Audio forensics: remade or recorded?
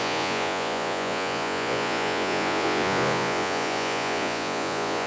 remade